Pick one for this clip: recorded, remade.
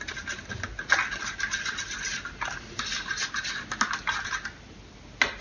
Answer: recorded